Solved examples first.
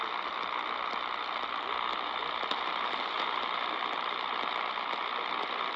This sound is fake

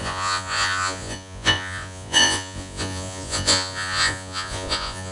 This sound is fake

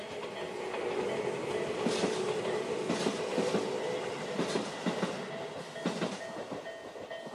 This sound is real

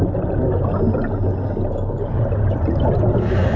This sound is real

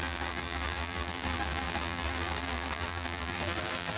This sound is fake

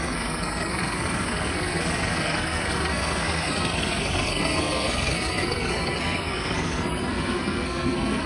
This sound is fake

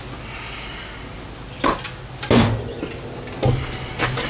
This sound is real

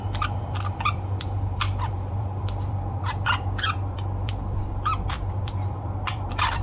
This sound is fake